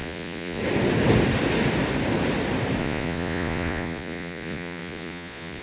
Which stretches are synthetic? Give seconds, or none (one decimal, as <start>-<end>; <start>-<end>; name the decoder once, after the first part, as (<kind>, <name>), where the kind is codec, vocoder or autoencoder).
0.0-0.6 (vocoder, Vocos); 2.8-5.6